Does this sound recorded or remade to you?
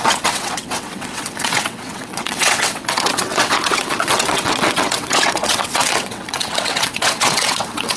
remade